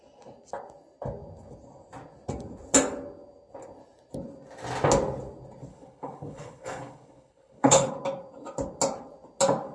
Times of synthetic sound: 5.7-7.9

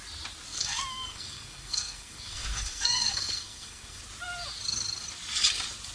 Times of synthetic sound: 0.5-4.0

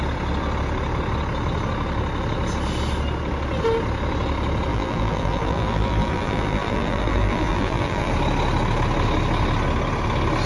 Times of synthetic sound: 4.7-8.1

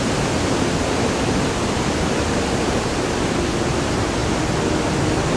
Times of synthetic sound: none

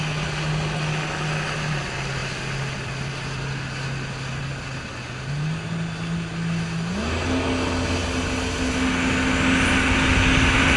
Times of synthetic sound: none